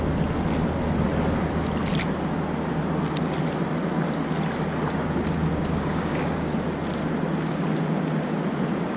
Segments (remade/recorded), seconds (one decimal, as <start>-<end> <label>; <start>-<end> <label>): 0.0-5.6 recorded; 5.6-6.5 remade; 6.5-9.0 recorded